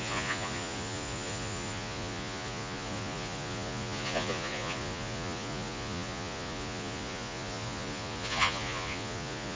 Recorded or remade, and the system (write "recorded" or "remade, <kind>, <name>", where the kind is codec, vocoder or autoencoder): remade, vocoder, Vocos